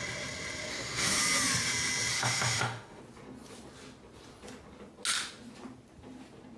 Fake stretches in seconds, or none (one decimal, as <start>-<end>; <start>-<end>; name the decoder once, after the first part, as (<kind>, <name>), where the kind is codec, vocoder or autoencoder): 0.7-1.2 (autoencoder, DAC-VAE); 2.1-3.0